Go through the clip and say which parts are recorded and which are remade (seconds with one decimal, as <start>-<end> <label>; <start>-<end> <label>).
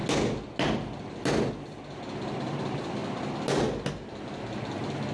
0.0-5.1 recorded